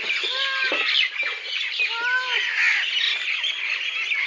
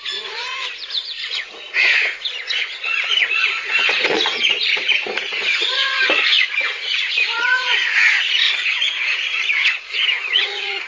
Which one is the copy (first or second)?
second